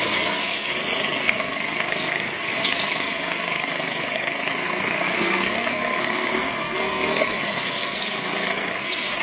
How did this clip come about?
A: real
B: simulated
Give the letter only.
B